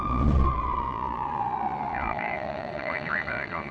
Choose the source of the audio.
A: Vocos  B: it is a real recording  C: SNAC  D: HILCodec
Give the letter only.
A